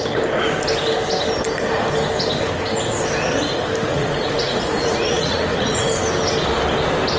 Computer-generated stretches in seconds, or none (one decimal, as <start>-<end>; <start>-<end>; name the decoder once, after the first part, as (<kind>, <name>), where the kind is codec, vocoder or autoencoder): 3.9-5.9 (vocoder, Vocos)